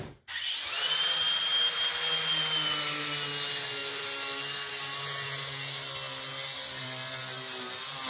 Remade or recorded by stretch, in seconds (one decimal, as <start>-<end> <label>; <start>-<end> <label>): 0.0-8.1 recorded